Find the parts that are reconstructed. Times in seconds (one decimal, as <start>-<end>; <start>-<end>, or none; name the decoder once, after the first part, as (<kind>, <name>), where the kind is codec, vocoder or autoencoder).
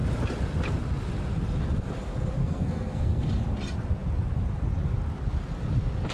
2.4-3.2 (codec, SNAC)